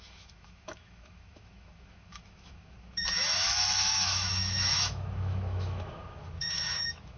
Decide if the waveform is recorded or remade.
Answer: remade